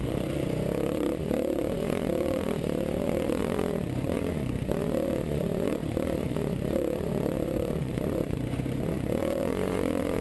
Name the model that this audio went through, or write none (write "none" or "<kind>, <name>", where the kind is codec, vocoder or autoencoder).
vocoder, Vocos